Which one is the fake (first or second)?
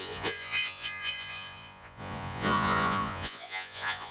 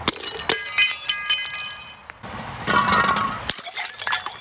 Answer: first